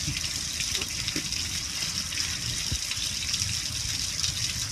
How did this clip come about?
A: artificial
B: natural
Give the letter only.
B